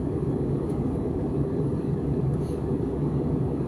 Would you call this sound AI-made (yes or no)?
yes